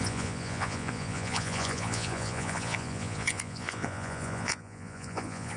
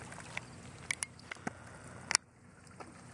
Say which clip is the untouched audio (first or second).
second